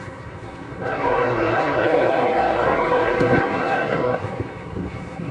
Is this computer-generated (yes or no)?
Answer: yes